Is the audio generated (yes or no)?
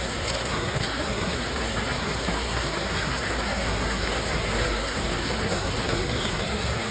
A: yes